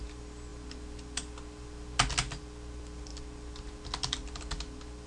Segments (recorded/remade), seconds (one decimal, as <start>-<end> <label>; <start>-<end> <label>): 0.0-5.1 recorded